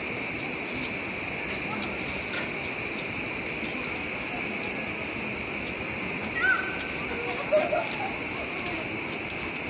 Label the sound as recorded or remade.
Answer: recorded